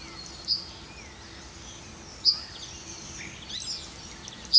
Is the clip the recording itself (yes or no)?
yes